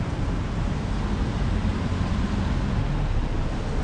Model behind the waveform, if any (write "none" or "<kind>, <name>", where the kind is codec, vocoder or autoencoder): none